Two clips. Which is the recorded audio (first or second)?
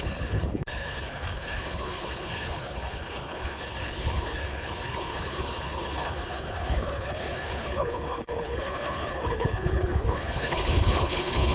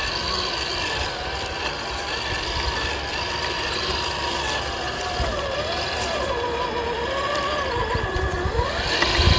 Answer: second